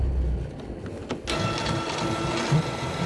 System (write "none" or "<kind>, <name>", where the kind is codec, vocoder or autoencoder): none